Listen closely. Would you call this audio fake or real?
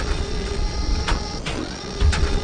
fake